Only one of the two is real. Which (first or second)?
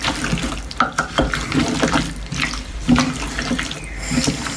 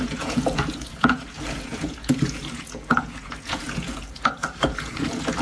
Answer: first